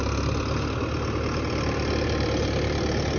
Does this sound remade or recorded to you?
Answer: recorded